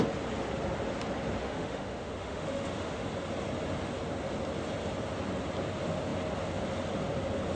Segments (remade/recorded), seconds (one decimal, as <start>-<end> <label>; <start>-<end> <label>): 0.0-1.4 recorded; 1.4-3.0 remade; 3.0-7.6 recorded